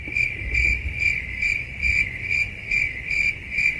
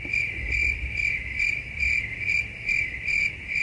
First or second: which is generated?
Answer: first